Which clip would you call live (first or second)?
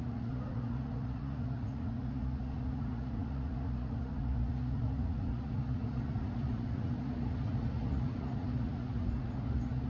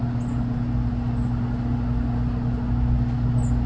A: second